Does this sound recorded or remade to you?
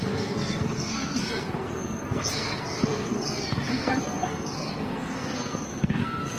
remade